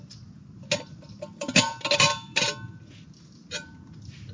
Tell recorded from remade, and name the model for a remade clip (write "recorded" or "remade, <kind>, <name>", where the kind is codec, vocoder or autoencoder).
recorded